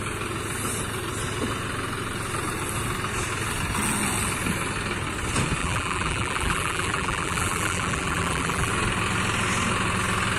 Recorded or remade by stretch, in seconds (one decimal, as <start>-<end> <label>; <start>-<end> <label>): 0.0-5.6 recorded; 5.6-8.7 remade; 8.7-10.4 recorded